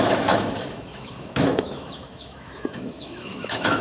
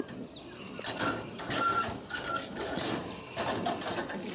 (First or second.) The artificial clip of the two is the first